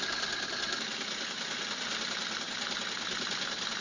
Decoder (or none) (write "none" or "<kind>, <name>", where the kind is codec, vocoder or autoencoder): none